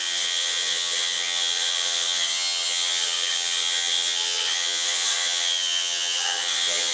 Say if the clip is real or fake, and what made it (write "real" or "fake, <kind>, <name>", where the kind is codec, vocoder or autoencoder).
fake, vocoder, HiFi-GAN